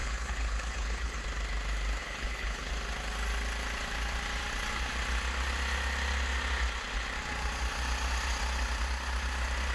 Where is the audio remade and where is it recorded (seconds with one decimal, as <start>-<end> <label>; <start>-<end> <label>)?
0.0-1.2 remade; 1.2-2.0 recorded; 2.0-2.7 remade; 2.7-9.7 recorded